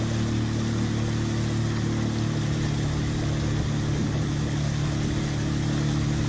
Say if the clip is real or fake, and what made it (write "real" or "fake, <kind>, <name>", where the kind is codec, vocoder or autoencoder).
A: real